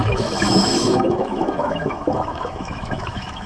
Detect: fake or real fake